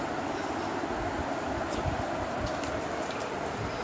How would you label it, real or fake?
real